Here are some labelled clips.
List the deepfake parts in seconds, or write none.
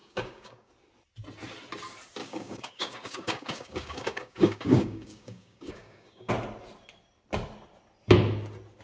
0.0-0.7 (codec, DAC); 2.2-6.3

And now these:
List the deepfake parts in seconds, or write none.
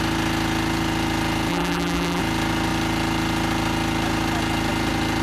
1.5-2.2 (vocoder, BigVGAN v2)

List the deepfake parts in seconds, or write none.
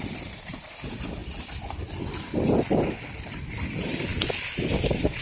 0.0-5.2 (vocoder, BigVGAN v2)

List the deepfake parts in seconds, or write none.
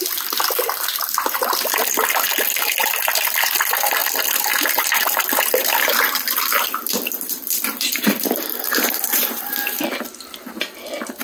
0.0-11.2 (vocoder, BigVGAN v2)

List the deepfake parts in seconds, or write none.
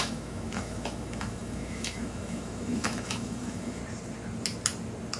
0.0-3.8 (autoencoder, DAC-VAE)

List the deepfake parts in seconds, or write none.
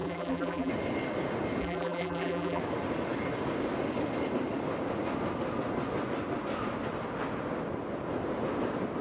0.0-0.7 (vocoder, BigVGAN v2); 1.6-2.6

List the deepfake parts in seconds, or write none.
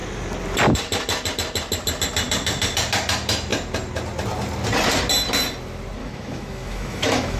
6.0-7.4 (autoencoder, DAC-VAE)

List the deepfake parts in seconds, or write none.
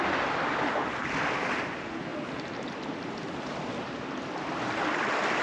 none